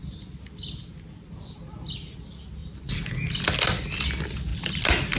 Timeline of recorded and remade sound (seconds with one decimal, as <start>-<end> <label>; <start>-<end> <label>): 0.0-2.6 recorded; 2.6-3.1 remade; 3.1-4.5 recorded; 4.5-5.2 remade